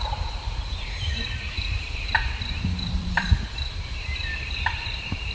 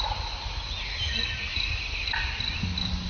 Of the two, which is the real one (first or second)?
second